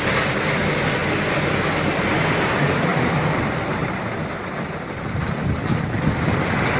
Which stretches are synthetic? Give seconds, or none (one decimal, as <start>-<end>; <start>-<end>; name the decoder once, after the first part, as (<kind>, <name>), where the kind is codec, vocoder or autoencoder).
0.0-3.8 (vocoder, BigVGAN v2); 5.0-6.8